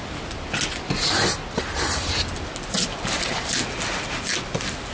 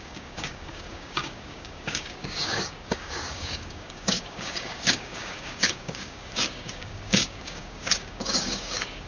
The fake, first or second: second